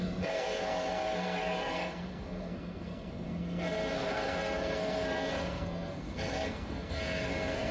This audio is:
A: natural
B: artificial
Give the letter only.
B